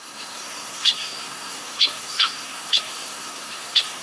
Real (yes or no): no